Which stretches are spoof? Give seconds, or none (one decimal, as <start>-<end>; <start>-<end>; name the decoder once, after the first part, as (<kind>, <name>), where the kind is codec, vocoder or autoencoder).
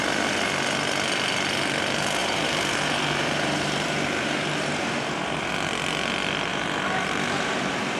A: 2.2-5.5 (vocoder, BigVGAN v2); 6.5-8.0